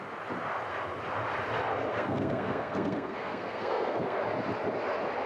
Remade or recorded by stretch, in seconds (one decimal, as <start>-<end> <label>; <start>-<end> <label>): 0.0-1.9 recorded; 1.9-4.2 remade; 4.2-5.3 recorded